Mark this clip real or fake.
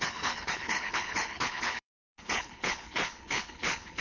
fake